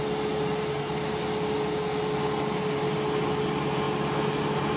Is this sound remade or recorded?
recorded